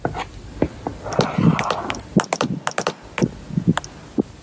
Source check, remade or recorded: recorded